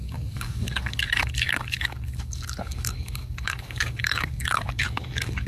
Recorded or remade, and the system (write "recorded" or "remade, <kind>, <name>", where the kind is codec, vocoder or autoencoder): remade, codec, DAC